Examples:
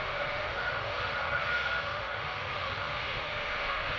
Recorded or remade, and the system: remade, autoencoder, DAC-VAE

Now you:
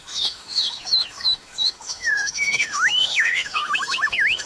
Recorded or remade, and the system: remade, autoencoder, DAC-VAE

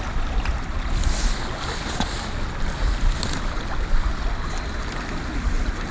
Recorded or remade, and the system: recorded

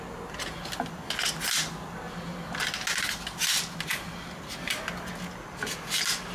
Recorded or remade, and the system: recorded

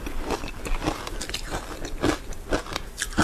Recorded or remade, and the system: recorded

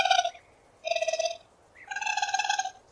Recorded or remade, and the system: recorded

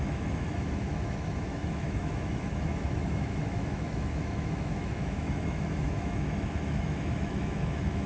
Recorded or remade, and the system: remade, autoencoder, DAC-VAE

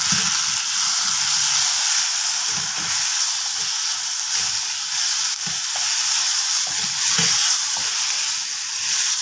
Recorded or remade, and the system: recorded